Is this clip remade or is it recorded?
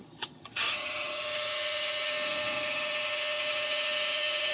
remade